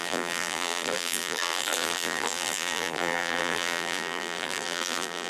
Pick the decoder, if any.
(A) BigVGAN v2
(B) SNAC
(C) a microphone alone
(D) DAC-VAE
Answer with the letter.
A